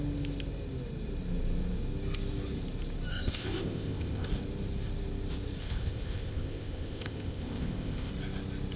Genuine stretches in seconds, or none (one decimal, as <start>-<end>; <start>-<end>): 0.0-3.1; 4.3-5.6; 8.1-8.8

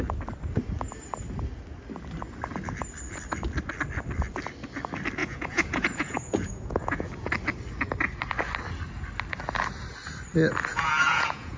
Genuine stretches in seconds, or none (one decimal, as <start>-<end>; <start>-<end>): 0.0-5.2; 7.3-10.7